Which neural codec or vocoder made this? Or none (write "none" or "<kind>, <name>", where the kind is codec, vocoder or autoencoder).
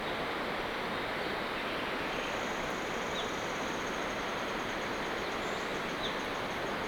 none